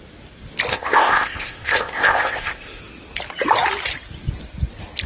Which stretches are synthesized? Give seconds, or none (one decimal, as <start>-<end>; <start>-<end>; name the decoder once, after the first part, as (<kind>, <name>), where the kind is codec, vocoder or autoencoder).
0.7-2.8 (codec, ZipCodec)